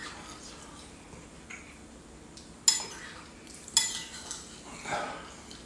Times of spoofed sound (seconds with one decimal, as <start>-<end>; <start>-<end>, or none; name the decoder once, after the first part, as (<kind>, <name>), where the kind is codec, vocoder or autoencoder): none